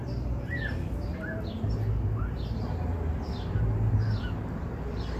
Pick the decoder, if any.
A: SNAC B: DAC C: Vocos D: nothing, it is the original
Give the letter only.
D